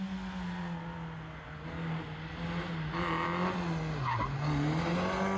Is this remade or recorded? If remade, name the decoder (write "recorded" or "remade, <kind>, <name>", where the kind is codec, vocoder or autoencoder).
recorded